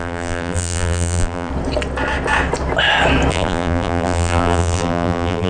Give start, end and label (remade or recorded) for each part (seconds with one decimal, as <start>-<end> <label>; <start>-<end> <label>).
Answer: 0.0-1.5 remade; 1.5-3.3 recorded; 3.3-5.5 remade